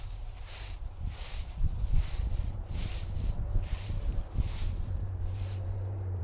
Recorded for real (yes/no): no